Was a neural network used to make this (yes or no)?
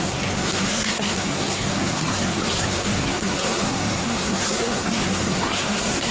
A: yes